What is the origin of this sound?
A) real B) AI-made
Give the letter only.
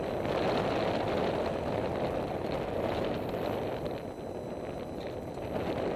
A